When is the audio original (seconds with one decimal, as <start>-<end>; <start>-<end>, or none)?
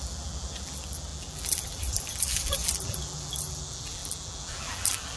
none